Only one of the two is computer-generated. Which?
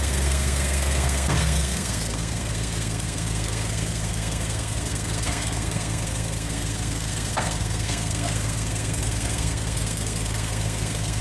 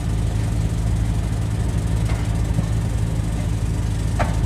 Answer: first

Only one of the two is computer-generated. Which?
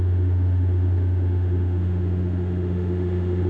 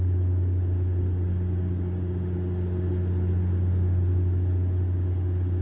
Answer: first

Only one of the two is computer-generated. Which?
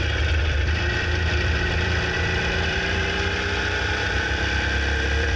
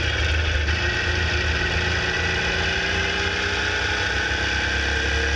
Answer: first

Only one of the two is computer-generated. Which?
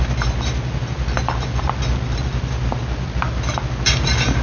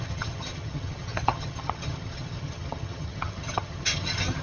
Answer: second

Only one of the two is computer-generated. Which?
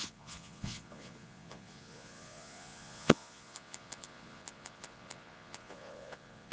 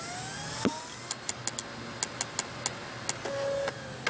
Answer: first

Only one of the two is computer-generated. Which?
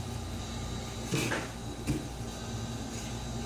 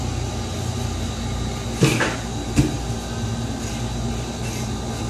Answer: second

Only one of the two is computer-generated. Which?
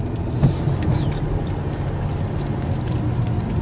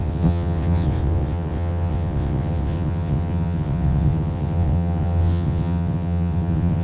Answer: second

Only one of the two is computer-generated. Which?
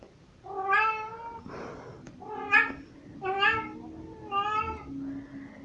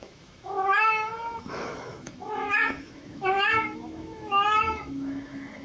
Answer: second